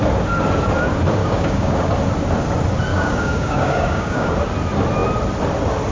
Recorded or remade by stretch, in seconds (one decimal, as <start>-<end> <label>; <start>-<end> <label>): 0.0-1.2 recorded; 1.2-1.9 remade; 1.9-2.9 recorded; 2.9-4.3 remade; 4.3-5.9 recorded